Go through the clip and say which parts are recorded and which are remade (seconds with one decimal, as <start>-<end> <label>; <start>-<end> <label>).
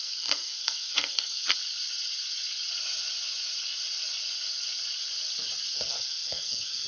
0.0-1.6 remade; 1.6-5.7 recorded; 5.7-6.9 remade